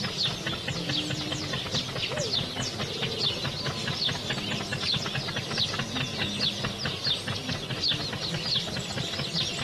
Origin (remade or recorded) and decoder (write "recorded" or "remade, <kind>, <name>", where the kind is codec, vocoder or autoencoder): recorded